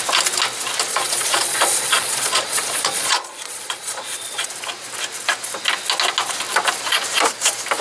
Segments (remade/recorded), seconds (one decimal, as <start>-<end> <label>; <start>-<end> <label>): 0.0-0.9 recorded; 0.9-4.5 remade; 4.5-7.8 recorded